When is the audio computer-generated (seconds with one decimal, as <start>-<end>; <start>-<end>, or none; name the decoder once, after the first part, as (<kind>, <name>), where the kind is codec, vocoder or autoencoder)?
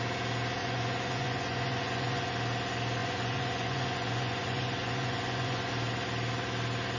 0.6-2.3 (vocoder, Vocos); 3.0-5.7